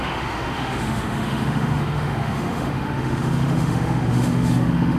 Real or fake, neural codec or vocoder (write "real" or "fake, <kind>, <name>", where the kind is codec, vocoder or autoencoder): fake, autoencoder, DAC-VAE